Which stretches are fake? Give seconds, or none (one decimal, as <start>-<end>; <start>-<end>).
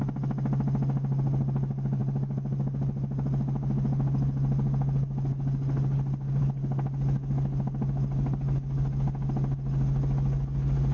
none